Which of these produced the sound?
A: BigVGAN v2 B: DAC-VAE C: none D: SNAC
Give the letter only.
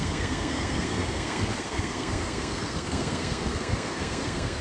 D